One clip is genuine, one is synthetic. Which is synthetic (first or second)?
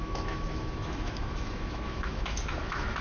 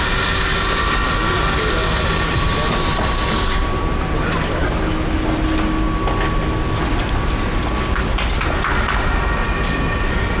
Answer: first